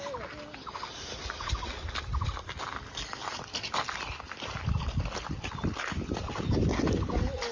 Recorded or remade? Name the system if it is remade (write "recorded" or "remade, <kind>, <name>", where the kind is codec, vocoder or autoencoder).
recorded